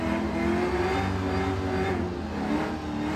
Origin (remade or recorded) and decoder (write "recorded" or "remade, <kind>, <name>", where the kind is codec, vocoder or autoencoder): recorded